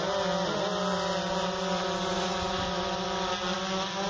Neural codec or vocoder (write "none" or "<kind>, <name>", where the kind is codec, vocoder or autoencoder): none